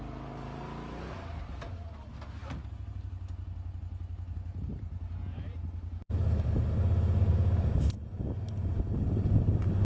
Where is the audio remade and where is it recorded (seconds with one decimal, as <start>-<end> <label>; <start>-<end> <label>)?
0.0-9.8 recorded